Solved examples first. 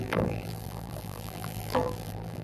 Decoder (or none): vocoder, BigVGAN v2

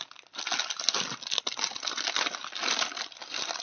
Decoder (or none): none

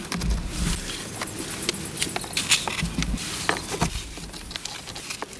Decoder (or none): none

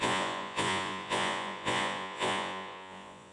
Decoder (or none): vocoder, Vocos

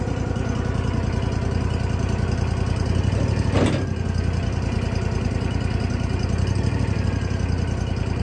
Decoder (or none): none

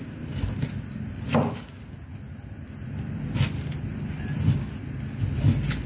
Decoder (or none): none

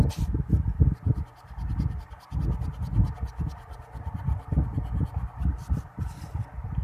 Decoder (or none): none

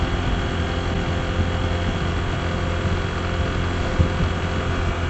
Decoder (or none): none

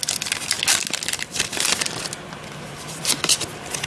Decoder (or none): none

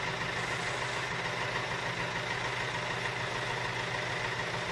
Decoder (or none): none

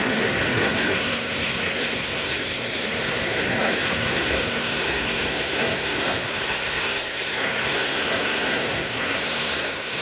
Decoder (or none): codec, SNAC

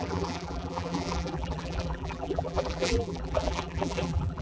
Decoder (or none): vocoder, BigVGAN v2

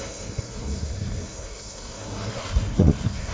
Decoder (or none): codec, SNAC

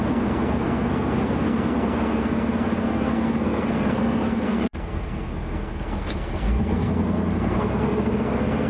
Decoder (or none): codec, SNAC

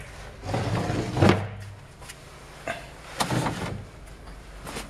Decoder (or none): none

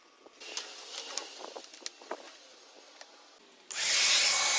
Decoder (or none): none